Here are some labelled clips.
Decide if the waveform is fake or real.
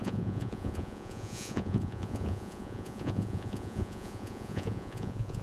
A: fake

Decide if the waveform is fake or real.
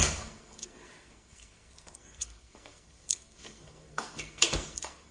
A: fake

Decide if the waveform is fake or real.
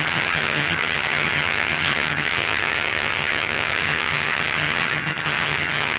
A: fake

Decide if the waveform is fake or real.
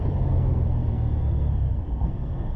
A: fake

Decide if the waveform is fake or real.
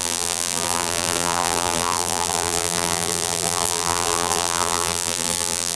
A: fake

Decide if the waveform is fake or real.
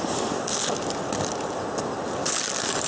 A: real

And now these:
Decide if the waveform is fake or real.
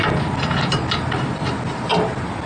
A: real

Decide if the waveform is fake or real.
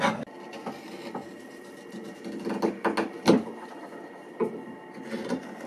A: real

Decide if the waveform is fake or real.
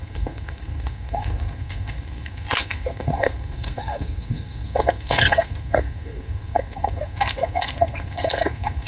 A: fake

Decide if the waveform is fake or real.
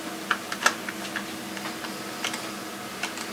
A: real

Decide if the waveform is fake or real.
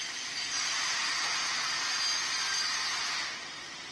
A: real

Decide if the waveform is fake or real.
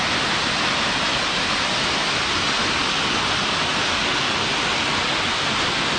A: real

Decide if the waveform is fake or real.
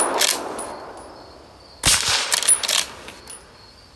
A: real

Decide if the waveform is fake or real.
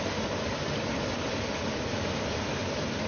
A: real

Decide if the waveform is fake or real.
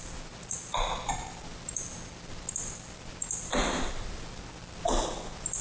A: real